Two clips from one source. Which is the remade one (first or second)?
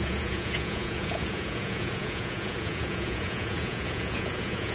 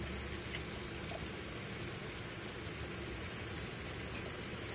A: first